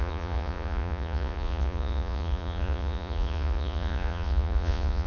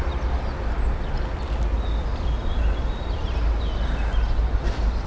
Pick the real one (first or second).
second